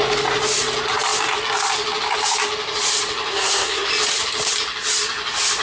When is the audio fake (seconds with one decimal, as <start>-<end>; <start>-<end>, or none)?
3.3-3.9